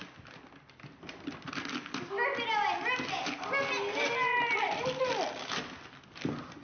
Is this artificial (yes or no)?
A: no